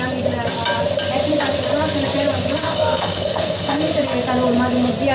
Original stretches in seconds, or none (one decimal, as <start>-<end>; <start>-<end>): 0.0-2.6; 3.9-5.1